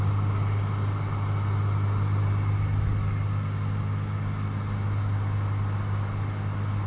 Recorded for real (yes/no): yes